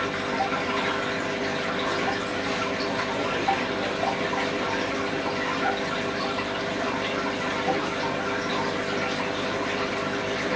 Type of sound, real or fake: real